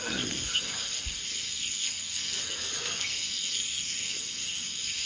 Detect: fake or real fake